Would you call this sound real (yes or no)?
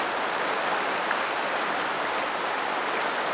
yes